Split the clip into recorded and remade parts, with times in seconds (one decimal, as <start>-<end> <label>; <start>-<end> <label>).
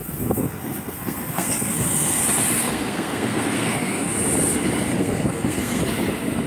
0.0-2.2 remade; 2.2-2.6 recorded; 2.6-4.1 remade; 4.1-4.9 recorded; 4.9-5.8 remade; 5.8-6.5 recorded